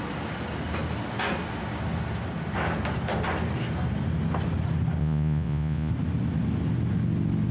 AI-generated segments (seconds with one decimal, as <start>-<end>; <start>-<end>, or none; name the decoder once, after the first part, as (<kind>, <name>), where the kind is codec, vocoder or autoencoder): 5.0-5.9 (vocoder, Vocos)

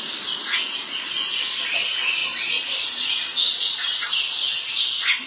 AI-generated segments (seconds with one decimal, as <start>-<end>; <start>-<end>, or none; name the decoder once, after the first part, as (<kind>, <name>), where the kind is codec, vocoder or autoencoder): 2.2-3.1 (vocoder, Vocos); 3.5-4.1

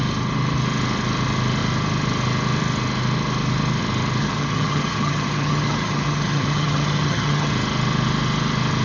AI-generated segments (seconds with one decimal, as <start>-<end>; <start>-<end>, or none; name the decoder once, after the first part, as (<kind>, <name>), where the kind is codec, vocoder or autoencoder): 4.2-7.5 (vocoder, HiFi-GAN)

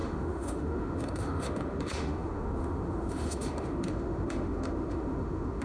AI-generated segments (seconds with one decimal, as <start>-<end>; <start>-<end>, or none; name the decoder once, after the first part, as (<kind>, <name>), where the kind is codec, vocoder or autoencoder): 0.0-5.6 (autoencoder, DAC-VAE)